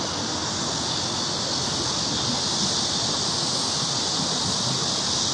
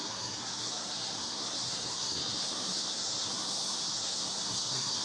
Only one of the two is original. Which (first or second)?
first